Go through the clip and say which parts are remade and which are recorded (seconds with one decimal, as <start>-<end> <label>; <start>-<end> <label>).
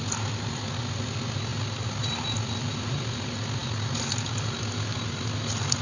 0.0-5.8 recorded